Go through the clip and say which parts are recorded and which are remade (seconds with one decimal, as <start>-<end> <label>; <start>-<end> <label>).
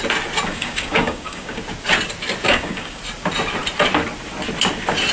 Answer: 0.0-0.5 recorded; 0.5-1.6 remade; 1.6-2.5 recorded; 2.5-3.0 remade; 3.0-5.1 recorded